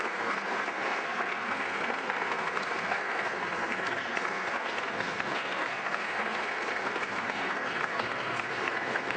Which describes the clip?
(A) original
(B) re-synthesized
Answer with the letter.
B